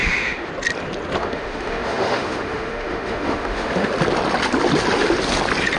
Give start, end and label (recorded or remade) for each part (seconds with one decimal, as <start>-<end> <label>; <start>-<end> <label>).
0.0-0.5 remade; 0.5-1.2 recorded; 1.2-3.9 remade; 3.9-5.8 recorded